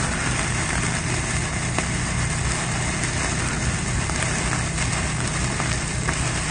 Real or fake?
real